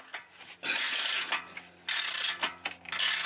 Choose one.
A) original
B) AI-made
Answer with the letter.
A